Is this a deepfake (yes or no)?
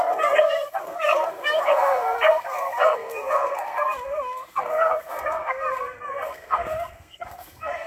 yes